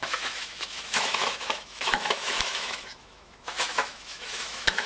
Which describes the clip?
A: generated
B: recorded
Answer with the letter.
A